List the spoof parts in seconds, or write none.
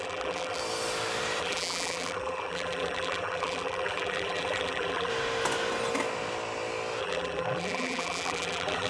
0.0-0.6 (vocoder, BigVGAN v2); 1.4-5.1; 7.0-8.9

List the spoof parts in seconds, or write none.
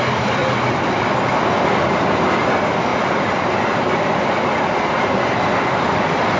none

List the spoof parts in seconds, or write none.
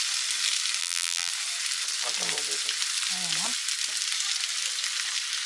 0.8-1.3 (vocoder, BigVGAN v2)